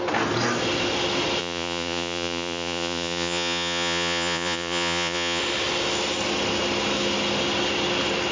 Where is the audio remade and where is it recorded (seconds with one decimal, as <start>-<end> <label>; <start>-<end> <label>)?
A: 0.0-1.4 recorded; 1.4-5.4 remade; 5.4-8.3 recorded